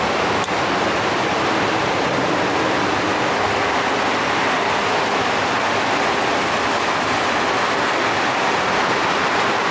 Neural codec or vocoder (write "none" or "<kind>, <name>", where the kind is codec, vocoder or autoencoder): none